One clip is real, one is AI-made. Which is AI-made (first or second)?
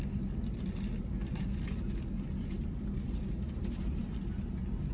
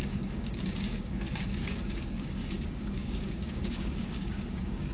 second